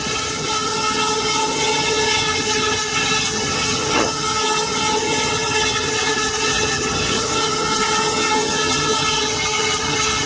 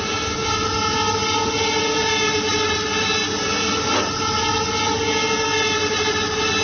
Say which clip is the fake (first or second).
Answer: first